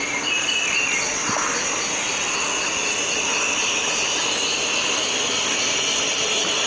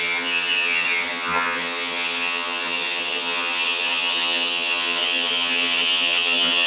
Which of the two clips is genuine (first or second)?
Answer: first